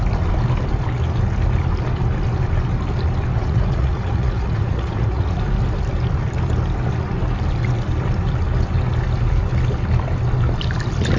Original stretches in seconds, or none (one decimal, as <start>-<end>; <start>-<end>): 0.0-3.3; 5.4-11.2